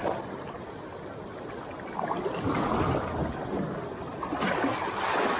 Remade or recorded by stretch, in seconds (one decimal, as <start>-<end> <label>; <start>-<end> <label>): 0.0-5.4 recorded